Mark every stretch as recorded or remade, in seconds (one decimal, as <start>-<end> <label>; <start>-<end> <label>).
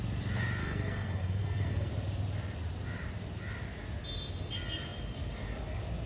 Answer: 0.0-0.6 recorded; 0.6-1.9 remade; 1.9-6.1 recorded